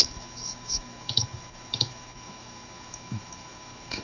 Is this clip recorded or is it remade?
remade